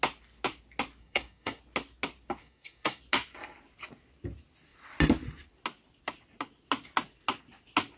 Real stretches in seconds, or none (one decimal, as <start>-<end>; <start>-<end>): 0.0-1.0; 1.6-2.4; 3.0-8.0